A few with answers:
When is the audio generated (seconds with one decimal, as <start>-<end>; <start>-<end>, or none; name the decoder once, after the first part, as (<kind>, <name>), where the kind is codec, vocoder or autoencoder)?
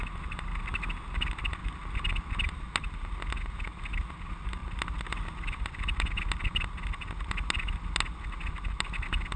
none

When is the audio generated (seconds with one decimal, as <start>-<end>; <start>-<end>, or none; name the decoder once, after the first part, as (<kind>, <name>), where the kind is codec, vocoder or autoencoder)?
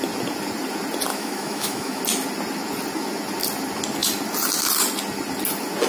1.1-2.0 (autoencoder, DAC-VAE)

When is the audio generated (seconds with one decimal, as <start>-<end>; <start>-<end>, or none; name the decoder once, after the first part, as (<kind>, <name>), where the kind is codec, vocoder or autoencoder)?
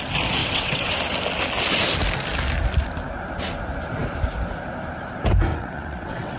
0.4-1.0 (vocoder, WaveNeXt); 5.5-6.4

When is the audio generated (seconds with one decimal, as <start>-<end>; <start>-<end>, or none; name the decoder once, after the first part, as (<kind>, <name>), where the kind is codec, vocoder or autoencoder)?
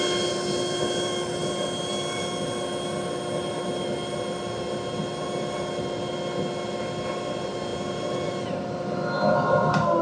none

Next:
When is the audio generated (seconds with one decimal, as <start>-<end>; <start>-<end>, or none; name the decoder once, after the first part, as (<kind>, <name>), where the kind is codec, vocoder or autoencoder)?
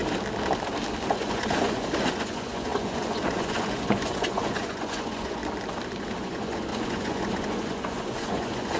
1.1-5.4 (vocoder, Vocos); 6.2-8.8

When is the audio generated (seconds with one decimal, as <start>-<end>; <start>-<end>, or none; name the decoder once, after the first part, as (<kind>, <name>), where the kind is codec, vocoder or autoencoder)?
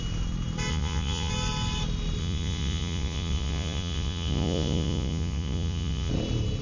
0.7-1.3 (vocoder, Vocos); 2.2-6.1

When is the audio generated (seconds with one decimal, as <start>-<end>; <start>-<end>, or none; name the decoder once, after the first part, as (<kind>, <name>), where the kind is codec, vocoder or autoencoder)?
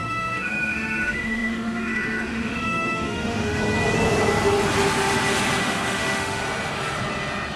0.0-3.6 (autoencoder, DAC-VAE); 5.6-6.4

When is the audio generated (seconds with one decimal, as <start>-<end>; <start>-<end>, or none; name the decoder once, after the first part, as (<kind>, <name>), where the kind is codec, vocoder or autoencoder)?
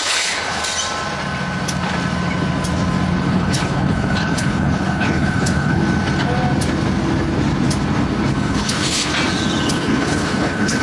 0.0-0.6 (codec, HILCodec); 3.1-5.8; 8.3-9.1; 9.7-10.8